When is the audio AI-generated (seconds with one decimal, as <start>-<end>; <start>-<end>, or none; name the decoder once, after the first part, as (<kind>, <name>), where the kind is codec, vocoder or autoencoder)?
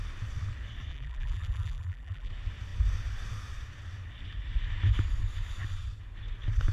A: 0.9-2.3 (vocoder, BigVGAN v2)